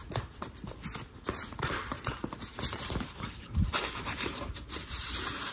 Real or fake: fake